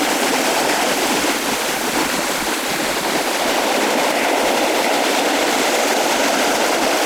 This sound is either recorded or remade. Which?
recorded